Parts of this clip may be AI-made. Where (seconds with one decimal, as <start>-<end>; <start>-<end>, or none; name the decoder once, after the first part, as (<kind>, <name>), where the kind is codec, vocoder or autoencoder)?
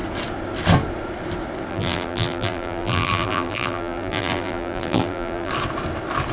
1.7-5.5 (vocoder, BigVGAN v2)